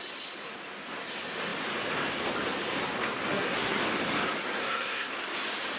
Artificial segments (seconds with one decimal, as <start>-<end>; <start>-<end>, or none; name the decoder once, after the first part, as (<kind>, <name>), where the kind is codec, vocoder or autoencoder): 3.3-3.8 (codec, SNAC); 4.4-5.1